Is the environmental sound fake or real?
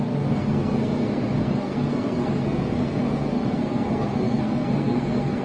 fake